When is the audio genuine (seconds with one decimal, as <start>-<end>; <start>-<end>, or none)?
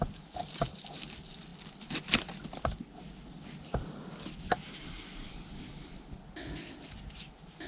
0.0-7.7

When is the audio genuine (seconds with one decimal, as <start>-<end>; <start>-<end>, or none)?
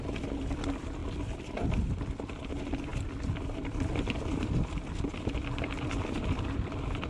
1.0-1.8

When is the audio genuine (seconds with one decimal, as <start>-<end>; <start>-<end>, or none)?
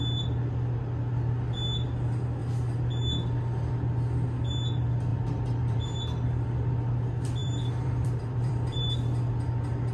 0.0-5.1; 5.8-7.4; 8.8-9.9